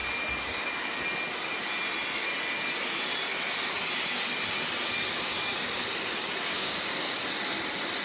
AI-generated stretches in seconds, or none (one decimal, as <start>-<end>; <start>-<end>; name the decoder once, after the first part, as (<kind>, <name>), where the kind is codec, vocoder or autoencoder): 5.3-7.2 (codec, DAC)